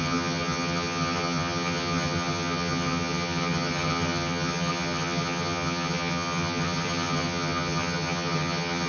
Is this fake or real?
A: fake